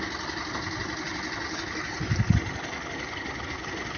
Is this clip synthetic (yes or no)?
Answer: no